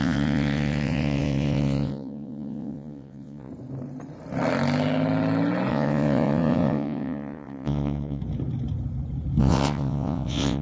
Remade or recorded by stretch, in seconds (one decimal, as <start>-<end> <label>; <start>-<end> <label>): 0.0-3.5 remade; 3.5-5.7 recorded; 5.7-8.2 remade; 8.2-9.4 recorded; 9.4-10.6 remade